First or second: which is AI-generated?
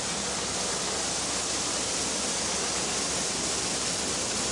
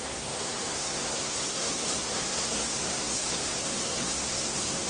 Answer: second